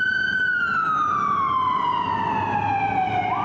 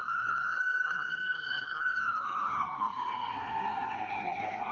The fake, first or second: second